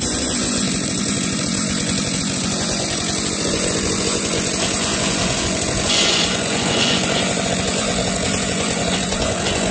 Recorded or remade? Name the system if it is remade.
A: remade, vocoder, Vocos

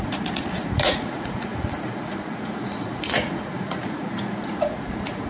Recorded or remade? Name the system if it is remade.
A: remade, vocoder, Vocos